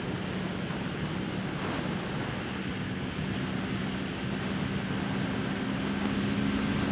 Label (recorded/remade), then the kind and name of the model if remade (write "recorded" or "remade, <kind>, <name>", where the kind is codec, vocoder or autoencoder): recorded